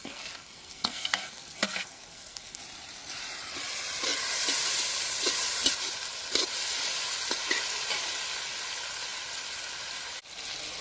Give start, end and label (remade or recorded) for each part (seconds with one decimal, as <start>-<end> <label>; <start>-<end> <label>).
0.0-2.6 remade; 2.6-10.8 recorded

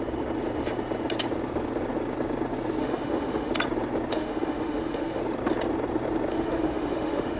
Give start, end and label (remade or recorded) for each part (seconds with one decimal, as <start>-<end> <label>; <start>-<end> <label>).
0.0-2.8 recorded; 2.8-3.5 remade; 3.5-4.1 recorded; 4.1-5.2 remade; 5.2-6.3 recorded; 6.3-7.4 remade